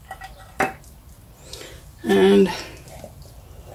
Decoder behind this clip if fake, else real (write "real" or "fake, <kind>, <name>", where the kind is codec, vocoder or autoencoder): real